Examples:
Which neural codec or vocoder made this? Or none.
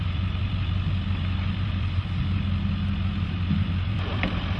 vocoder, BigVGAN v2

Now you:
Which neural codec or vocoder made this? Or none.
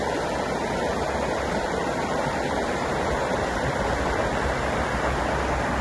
none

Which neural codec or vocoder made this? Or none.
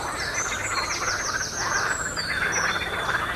vocoder, BigVGAN v2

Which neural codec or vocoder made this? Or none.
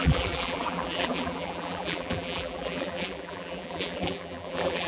vocoder, BigVGAN v2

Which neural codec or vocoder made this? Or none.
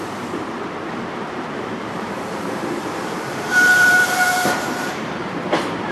vocoder, BigVGAN v2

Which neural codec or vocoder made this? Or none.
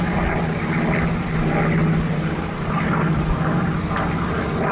none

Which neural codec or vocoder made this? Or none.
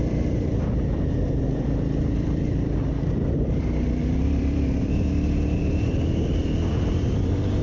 vocoder, BigVGAN v2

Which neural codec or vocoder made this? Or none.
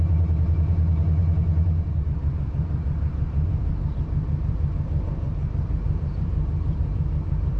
vocoder, BigVGAN v2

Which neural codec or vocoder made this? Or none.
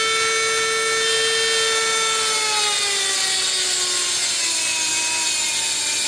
none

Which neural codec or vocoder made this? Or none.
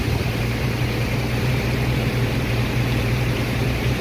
vocoder, BigVGAN v2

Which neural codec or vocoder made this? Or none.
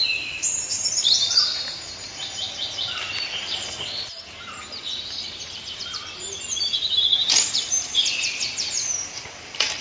vocoder, BigVGAN v2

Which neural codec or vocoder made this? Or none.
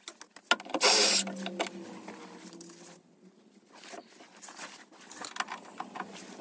none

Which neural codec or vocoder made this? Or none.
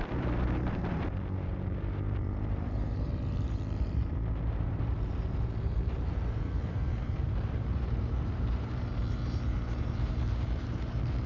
vocoder, BigVGAN v2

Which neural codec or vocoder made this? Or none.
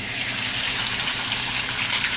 vocoder, BigVGAN v2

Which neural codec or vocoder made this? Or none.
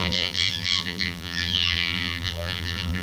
vocoder, BigVGAN v2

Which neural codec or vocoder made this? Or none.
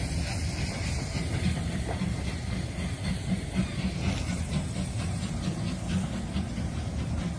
none